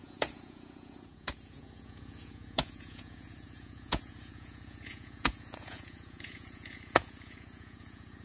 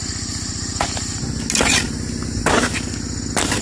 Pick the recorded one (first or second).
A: second